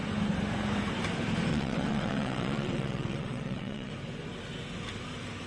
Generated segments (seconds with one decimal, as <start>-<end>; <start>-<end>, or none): 1.5-3.9